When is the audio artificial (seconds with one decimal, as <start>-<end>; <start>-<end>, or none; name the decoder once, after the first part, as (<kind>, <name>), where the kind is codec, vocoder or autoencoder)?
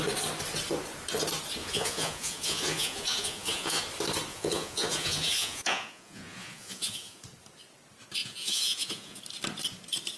1.6-3.8 (vocoder, Vocos); 4.3-7.2; 8.2-9.2